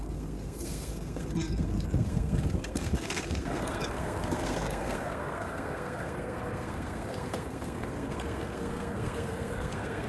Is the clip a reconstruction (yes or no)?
yes